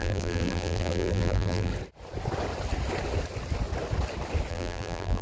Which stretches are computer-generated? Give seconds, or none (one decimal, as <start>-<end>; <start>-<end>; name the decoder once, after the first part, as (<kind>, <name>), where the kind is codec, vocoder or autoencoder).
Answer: 0.0-1.7 (vocoder, BigVGAN v2); 4.5-5.2

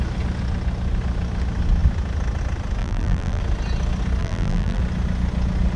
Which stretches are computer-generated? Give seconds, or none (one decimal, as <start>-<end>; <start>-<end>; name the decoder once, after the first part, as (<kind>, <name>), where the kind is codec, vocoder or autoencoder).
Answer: 2.8-3.4 (vocoder, BigVGAN v2); 4.2-4.8

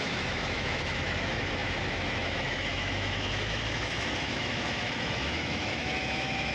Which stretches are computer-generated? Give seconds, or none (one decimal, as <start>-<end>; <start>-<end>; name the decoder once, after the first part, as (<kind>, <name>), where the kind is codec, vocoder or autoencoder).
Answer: 0.0-6.5 (autoencoder, DAC-VAE)

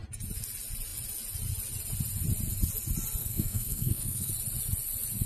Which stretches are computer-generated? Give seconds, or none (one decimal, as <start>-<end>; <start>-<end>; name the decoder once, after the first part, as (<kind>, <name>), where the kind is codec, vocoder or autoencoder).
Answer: 3.2-4.3 (codec, SNAC)

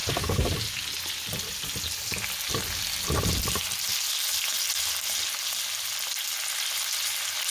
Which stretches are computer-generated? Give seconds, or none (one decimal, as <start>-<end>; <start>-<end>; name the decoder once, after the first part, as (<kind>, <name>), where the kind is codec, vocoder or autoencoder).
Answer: none

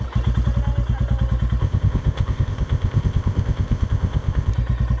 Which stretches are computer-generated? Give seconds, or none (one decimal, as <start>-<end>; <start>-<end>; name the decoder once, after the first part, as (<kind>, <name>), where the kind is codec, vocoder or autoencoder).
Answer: 1.6-4.5 (codec, ZipCodec)

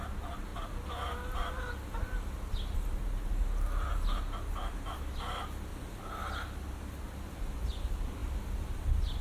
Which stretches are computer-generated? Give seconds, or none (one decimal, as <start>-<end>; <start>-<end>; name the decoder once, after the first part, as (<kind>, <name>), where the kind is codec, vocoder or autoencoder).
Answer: none